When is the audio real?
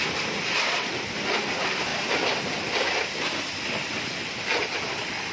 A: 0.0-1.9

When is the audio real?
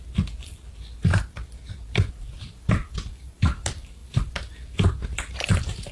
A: 0.0-2.8; 3.4-4.0; 4.5-5.9